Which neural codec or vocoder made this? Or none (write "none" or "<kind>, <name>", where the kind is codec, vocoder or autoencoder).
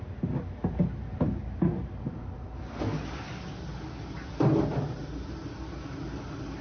none